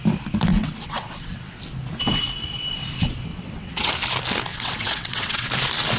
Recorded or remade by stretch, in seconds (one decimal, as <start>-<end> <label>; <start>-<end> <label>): 0.0-0.5 recorded; 0.5-1.6 remade; 1.6-3.3 recorded; 3.3-3.9 remade; 3.9-4.5 recorded; 4.5-5.5 remade; 5.5-6.0 recorded